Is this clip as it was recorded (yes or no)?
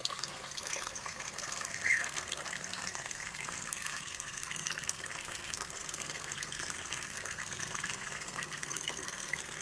no